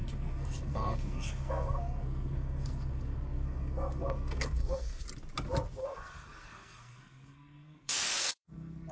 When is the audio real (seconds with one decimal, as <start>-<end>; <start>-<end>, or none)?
5.0-5.8